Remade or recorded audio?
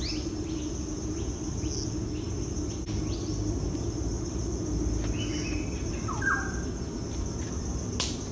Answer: recorded